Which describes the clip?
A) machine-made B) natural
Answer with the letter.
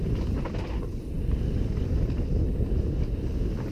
B